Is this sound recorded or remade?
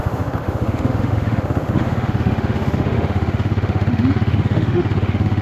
remade